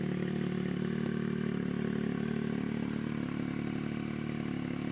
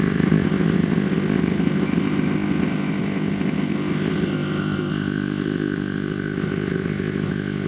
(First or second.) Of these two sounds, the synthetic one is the second